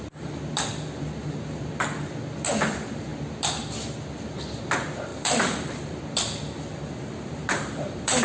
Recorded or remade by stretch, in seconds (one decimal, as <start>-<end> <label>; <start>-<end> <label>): 0.0-5.1 recorded; 5.1-6.0 remade; 6.0-6.7 recorded; 6.7-8.2 remade